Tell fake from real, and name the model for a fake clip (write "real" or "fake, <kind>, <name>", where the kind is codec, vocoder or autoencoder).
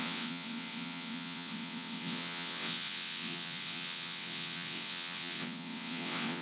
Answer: fake, vocoder, WaveNeXt